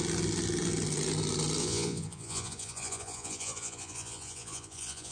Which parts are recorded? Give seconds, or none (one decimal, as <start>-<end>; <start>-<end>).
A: 0.0-1.6